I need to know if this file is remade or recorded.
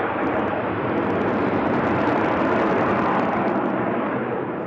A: remade